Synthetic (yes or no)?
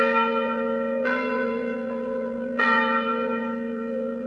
yes